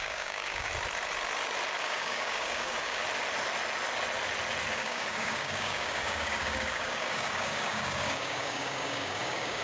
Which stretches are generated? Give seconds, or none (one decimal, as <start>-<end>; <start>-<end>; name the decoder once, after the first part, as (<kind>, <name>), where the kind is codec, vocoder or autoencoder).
0.0-0.7 (codec, DAC); 1.8-3.0; 4.7-9.6

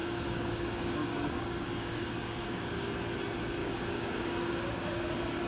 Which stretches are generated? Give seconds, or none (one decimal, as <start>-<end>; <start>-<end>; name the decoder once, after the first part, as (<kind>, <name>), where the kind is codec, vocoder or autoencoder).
0.0-2.9 (codec, DAC); 3.6-4.9

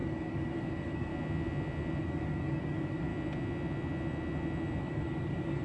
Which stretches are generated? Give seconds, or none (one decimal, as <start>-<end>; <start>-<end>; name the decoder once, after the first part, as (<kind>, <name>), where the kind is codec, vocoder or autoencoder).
0.0-1.1 (codec, DAC); 2.0-3.1; 4.8-5.6

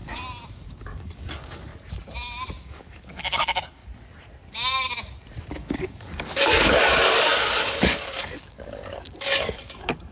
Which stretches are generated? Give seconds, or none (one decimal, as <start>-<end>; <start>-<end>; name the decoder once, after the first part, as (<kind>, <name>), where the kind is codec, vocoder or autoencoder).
0.5-1.7 (codec, DAC); 2.6-3.8; 5.4-10.1

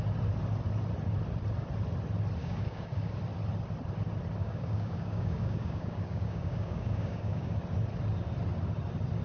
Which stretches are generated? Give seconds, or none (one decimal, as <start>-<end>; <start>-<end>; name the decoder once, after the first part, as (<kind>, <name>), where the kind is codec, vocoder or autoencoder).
2.4-3.1 (codec, DAC); 4.4-7.6

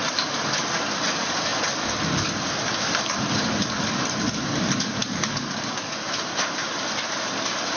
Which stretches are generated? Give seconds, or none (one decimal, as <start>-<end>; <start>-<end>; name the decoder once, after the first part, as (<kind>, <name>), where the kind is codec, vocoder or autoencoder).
5.0-5.9 (codec, DAC)